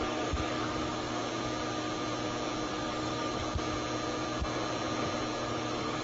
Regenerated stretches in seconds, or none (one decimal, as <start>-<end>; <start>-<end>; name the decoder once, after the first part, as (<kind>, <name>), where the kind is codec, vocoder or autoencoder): 0.0-1.2 (codec, DAC); 2.7-3.4; 5.5-6.0